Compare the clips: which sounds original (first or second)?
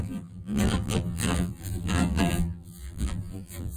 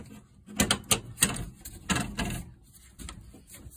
second